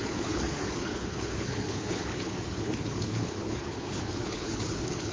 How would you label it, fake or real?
fake